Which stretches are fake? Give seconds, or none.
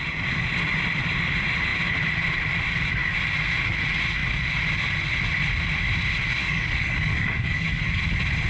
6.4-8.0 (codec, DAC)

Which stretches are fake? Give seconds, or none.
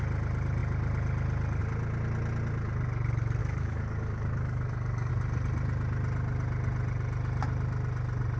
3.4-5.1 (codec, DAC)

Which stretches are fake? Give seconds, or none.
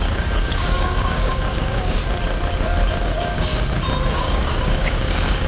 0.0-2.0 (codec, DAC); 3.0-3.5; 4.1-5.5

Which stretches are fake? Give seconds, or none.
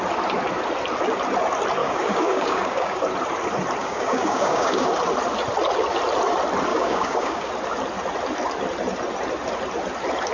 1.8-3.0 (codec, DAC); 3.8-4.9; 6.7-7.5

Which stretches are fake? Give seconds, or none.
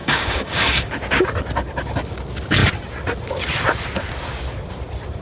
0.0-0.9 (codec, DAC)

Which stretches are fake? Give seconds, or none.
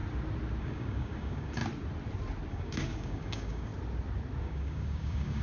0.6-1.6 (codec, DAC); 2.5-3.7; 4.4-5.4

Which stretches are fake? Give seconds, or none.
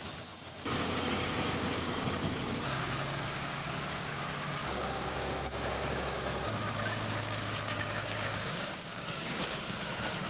0.0-10.3 (codec, DAC)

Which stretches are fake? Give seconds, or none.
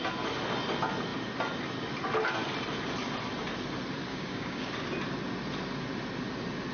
4.1-4.7 (codec, DAC)